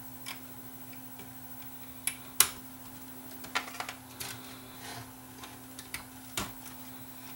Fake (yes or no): no